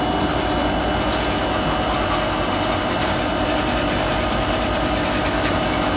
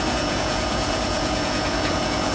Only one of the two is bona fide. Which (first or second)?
first